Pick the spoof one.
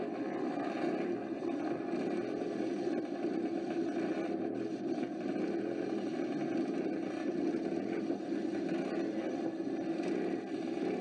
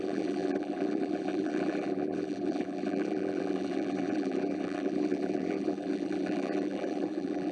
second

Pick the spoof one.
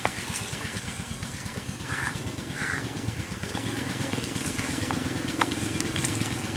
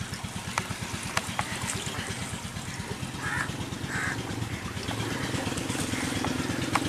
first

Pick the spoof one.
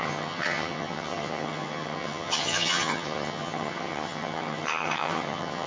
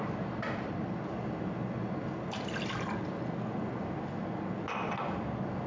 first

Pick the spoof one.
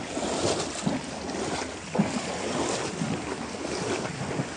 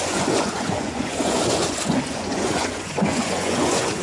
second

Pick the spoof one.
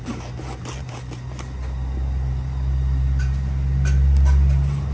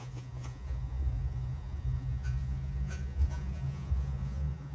second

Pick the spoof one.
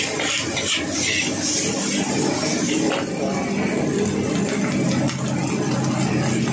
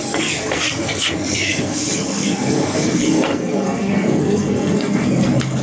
second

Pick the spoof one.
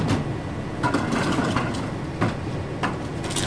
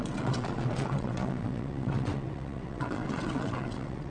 second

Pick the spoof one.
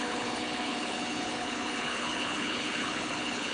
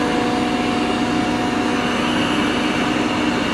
first